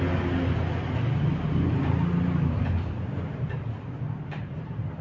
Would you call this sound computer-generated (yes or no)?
no